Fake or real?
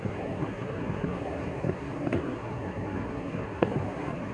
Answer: fake